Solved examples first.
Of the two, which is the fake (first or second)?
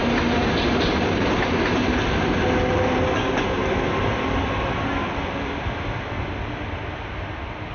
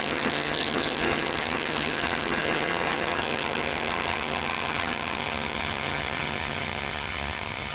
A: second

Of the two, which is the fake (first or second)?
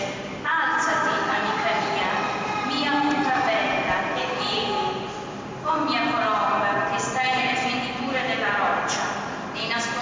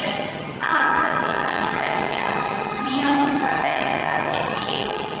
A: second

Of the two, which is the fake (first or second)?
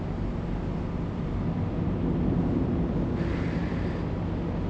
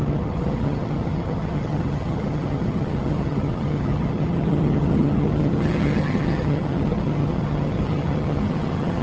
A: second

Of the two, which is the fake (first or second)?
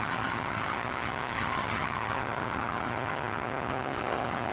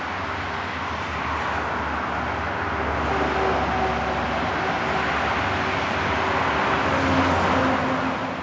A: first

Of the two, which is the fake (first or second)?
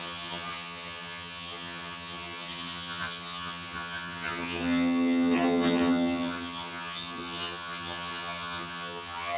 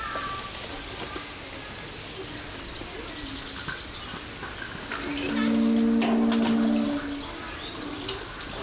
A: first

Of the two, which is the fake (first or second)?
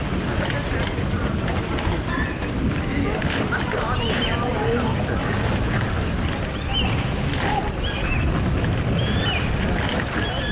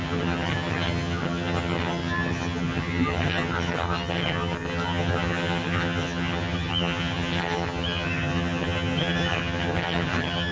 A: second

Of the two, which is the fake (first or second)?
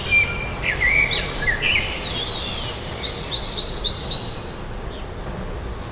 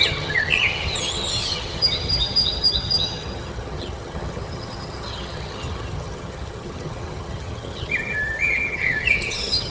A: second